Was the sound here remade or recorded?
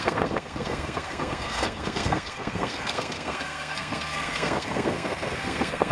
remade